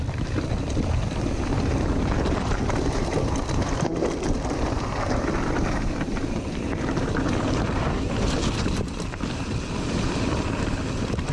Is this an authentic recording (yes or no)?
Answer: no